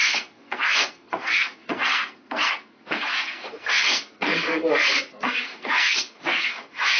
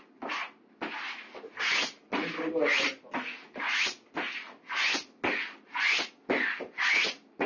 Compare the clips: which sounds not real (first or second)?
first